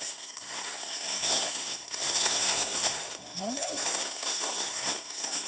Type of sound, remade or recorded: remade